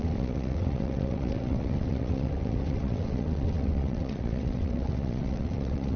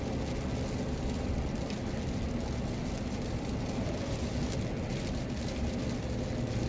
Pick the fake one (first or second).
first